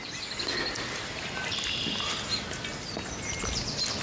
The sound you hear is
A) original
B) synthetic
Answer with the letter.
A